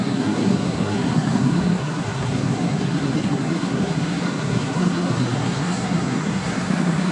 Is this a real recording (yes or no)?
no